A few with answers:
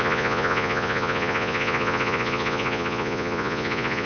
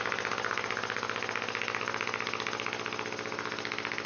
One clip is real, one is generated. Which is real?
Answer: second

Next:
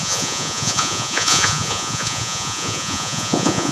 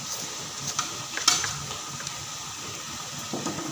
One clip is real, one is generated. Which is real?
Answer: second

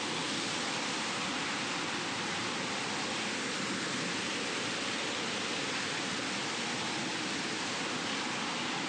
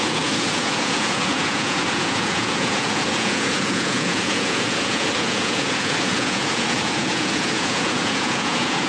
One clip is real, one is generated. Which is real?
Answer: first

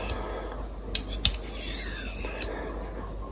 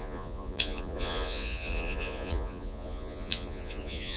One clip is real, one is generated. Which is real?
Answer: first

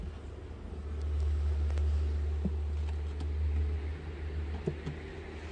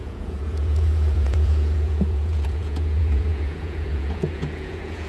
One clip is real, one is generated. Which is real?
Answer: first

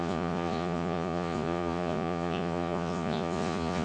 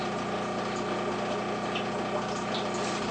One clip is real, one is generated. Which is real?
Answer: second